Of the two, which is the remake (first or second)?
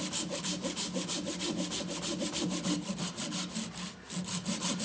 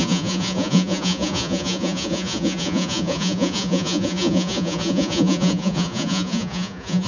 second